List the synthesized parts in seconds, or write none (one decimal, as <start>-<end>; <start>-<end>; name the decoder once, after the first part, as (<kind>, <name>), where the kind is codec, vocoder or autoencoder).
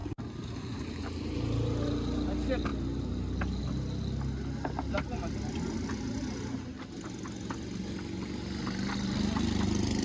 none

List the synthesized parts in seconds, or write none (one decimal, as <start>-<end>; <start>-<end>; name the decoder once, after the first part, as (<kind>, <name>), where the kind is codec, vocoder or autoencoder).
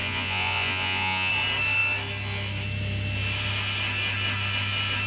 0.0-1.3 (vocoder, Vocos)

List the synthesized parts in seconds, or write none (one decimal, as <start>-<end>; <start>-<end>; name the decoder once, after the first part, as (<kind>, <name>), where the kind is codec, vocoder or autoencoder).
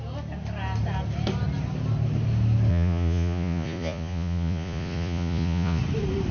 2.7-5.8 (vocoder, Vocos)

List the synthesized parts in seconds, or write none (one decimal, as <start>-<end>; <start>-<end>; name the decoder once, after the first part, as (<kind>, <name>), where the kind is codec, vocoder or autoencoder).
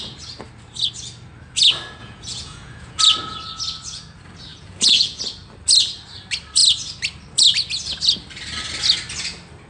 2.0-3.0 (vocoder, Vocos); 4.5-5.2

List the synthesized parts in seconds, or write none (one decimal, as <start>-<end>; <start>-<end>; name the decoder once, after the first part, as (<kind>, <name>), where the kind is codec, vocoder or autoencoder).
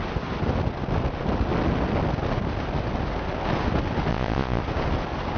4.1-4.6 (vocoder, Vocos)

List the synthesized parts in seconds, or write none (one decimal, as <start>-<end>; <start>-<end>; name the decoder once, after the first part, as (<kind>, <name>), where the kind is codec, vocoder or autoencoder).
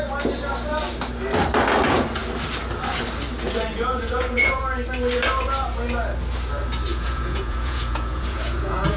3.7-4.6 (vocoder, Vocos); 6.9-9.0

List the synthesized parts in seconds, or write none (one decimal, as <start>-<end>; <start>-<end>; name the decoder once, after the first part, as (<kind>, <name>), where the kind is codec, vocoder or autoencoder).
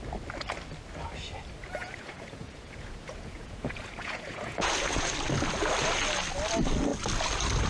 1.8-5.1 (vocoder, Vocos)